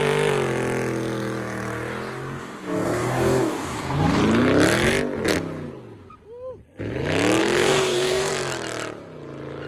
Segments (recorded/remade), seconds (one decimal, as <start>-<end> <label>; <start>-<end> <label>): 0.0-2.4 recorded; 2.4-4.2 remade; 4.2-7.4 recorded; 7.4-8.3 remade; 8.3-9.7 recorded